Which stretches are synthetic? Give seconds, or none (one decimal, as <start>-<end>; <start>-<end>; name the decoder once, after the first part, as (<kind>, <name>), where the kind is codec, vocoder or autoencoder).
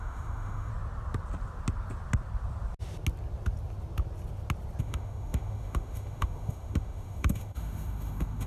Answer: 0.0-0.7 (autoencoder, DAC-VAE); 4.8-8.5